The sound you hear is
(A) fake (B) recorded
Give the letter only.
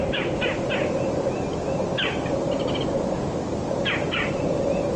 B